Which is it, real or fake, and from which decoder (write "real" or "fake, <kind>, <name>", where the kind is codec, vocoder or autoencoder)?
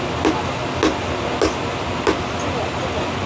real